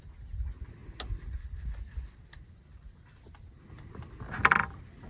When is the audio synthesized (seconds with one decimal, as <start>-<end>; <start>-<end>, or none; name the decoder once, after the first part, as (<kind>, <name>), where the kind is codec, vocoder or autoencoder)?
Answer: none